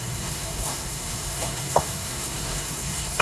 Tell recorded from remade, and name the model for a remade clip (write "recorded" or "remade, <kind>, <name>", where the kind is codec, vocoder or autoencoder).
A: remade, codec, SNAC